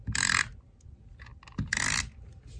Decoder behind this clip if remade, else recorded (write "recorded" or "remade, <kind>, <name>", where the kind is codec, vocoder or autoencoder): recorded